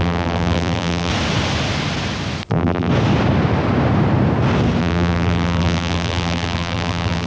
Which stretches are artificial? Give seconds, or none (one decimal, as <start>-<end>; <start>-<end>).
0.0-1.1; 2.5-2.9; 4.8-7.3

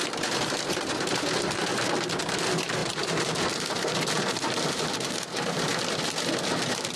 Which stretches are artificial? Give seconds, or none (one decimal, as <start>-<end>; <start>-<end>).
0.0-1.7; 2.2-5.7

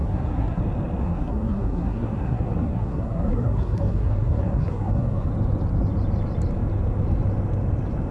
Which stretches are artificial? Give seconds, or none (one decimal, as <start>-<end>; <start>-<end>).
0.0-0.6; 1.0-5.3

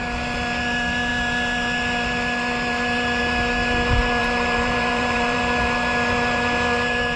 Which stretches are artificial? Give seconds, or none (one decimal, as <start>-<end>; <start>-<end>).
4.2-5.4

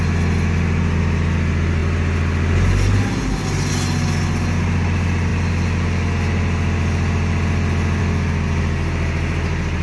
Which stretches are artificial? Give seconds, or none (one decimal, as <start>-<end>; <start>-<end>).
none

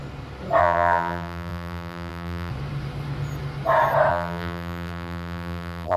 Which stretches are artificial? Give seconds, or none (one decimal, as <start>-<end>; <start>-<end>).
0.6-2.5; 4.1-6.0

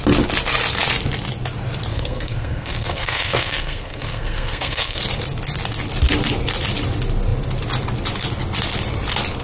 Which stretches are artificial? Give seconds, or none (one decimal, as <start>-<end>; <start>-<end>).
1.9-5.0